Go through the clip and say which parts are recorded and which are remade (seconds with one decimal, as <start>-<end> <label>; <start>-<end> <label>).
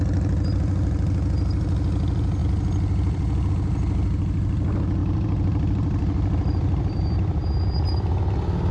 0.0-2.4 recorded; 2.4-3.5 remade; 3.5-5.0 recorded; 5.0-8.7 remade